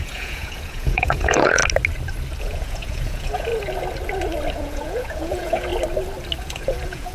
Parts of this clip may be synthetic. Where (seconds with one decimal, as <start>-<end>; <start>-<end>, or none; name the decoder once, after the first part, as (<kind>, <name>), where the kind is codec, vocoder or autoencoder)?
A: 0.0-1.6 (vocoder, Vocos); 2.4-3.5; 4.5-5.7; 6.4-7.1